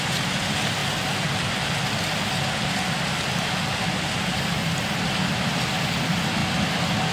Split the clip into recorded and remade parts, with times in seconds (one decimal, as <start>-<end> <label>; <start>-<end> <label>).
0.0-7.1 recorded

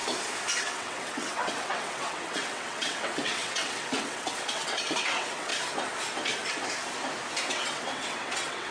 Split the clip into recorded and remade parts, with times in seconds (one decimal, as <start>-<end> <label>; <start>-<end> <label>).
0.0-0.6 recorded; 0.6-5.5 remade; 5.5-7.5 recorded; 7.5-8.7 remade

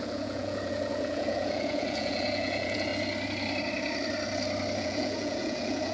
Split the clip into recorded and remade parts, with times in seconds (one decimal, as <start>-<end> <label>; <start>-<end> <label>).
0.0-2.9 remade; 2.9-4.8 recorded; 4.8-5.9 remade

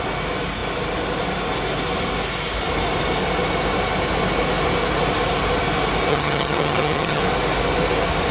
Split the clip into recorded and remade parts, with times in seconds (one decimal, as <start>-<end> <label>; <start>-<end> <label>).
0.0-6.1 recorded; 6.1-7.2 remade; 7.2-8.3 recorded